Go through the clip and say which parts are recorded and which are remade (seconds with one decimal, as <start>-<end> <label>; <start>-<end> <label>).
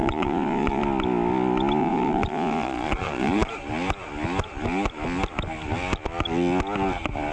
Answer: 0.0-0.8 remade; 0.8-1.8 recorded; 1.8-3.5 remade; 3.5-7.3 recorded